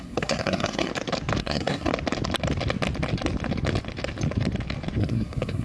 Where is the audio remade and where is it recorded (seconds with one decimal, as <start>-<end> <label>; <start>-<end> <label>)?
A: 0.0-0.9 remade; 0.9-1.4 recorded; 1.4-1.9 remade; 1.9-5.0 recorded; 5.0-5.6 remade